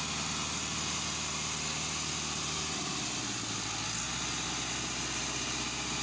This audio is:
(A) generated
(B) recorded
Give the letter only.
B